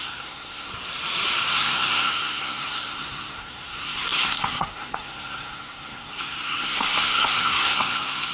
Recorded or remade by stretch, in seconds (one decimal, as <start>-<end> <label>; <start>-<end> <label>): 0.0-0.7 remade; 0.7-1.5 recorded; 1.5-8.3 remade